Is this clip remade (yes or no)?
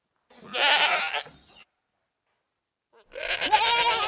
no